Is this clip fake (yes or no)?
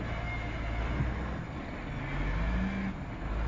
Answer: no